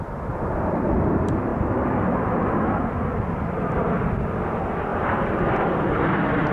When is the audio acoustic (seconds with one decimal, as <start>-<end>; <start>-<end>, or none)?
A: 0.0-6.5